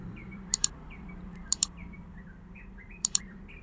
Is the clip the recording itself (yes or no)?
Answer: no